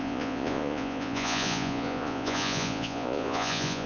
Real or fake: fake